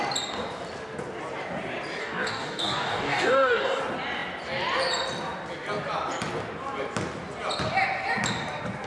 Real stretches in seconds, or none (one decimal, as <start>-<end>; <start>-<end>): 0.0-2.0; 3.8-8.9